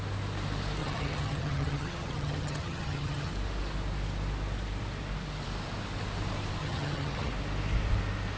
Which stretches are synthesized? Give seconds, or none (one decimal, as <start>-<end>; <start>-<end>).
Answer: 0.8-3.3; 6.6-7.3